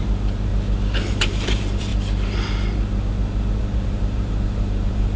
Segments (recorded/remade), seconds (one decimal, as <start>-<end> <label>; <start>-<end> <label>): 0.0-0.5 remade; 0.5-1.1 recorded; 1.1-1.9 remade; 1.9-3.6 recorded; 3.6-5.2 remade